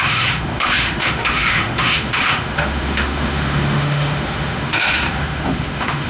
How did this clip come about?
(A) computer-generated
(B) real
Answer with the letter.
A